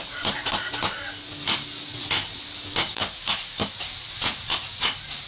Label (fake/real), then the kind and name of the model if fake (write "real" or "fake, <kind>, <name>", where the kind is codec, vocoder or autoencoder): real